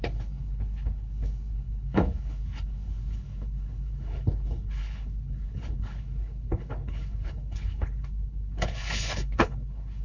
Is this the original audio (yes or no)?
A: no